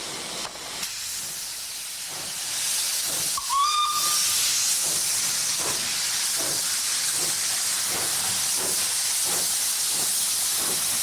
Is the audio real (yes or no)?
yes